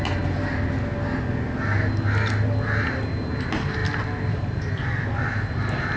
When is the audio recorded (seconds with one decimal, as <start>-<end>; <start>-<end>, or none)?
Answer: 0.0-6.0